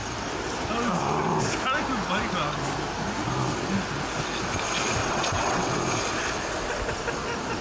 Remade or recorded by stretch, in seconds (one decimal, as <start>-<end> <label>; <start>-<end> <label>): 0.0-5.0 recorded; 5.0-5.7 remade; 5.7-7.6 recorded